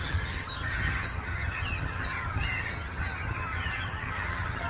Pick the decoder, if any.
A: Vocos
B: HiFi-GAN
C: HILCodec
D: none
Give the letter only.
B